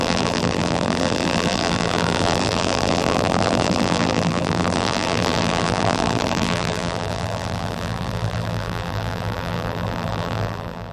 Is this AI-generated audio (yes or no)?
yes